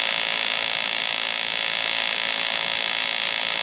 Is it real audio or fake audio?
real